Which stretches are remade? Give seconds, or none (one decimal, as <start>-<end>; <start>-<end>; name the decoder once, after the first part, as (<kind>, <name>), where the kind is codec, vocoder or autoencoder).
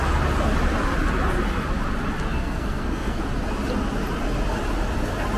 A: 2.4-3.2 (codec, SNAC)